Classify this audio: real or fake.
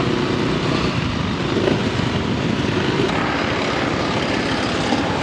fake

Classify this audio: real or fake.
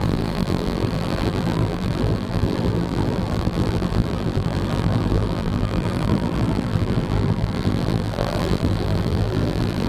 fake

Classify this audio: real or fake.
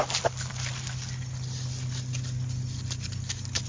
real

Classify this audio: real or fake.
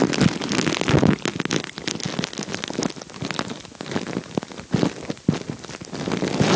real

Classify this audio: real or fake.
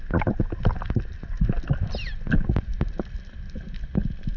real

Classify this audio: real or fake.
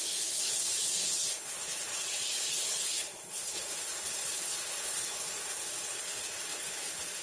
fake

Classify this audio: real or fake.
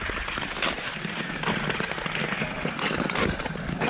real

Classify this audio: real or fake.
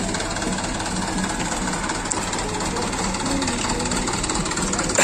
real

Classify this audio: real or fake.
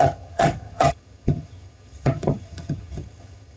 fake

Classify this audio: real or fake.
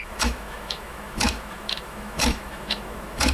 fake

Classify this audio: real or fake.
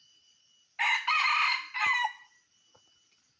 real